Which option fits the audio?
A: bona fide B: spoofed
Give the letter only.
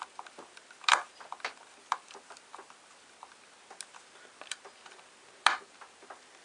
A